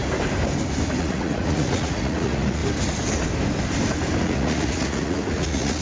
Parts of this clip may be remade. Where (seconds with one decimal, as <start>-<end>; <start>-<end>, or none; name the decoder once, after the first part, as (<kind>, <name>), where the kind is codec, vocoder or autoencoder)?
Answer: 1.0-2.6 (vocoder, Vocos); 4.2-5.8